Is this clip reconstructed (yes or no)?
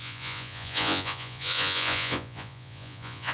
yes